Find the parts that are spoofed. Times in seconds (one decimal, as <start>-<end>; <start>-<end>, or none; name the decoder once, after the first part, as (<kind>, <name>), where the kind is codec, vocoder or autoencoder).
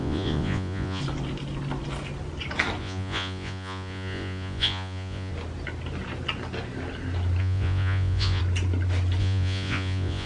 0.0-1.0 (vocoder, Vocos); 2.8-5.3; 7.4-8.4; 9.2-10.3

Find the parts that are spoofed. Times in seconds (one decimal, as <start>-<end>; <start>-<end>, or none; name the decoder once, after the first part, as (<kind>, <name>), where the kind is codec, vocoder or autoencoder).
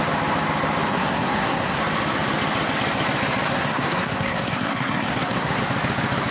0.9-1.8 (codec, SNAC); 3.5-5.6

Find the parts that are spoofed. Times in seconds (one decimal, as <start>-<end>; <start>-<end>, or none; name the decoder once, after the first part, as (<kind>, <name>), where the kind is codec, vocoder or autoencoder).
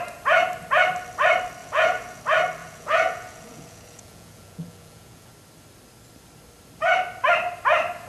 1.6-2.2 (vocoder, Vocos); 2.6-5.3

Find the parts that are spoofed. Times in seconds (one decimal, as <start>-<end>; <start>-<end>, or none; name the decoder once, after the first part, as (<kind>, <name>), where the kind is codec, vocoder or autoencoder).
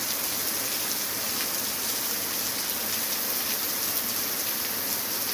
none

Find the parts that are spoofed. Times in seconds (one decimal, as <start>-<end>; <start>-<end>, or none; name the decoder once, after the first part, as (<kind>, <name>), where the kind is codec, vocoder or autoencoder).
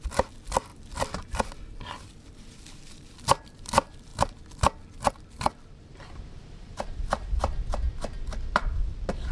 0.0-4.1 (vocoder, BigVGAN v2); 5.1-9.3